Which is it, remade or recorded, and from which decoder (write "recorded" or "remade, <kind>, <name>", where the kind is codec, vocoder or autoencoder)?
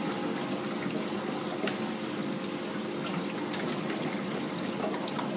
recorded